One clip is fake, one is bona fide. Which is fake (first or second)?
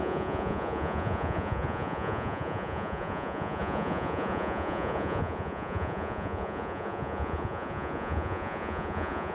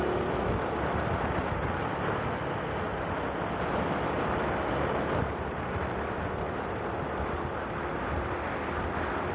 first